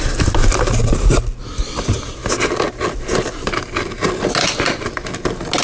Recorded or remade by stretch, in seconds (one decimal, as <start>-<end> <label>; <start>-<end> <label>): 0.0-5.6 recorded